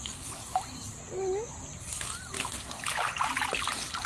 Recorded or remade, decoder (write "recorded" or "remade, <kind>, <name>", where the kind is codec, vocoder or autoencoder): recorded